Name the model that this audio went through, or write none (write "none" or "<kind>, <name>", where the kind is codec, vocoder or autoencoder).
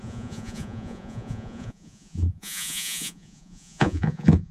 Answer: vocoder, Vocos